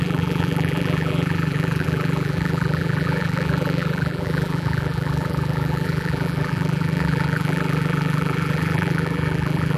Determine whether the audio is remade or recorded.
remade